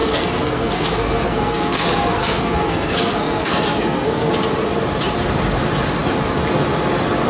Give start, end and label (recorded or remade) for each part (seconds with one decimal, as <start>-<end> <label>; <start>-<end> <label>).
0.0-4.3 remade; 4.3-7.3 recorded